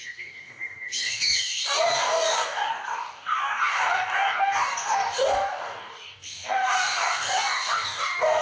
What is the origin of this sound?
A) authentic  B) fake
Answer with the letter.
B